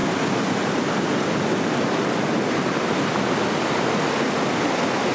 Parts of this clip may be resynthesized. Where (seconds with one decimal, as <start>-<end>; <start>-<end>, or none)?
none